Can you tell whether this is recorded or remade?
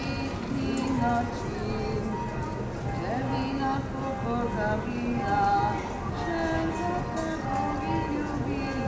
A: recorded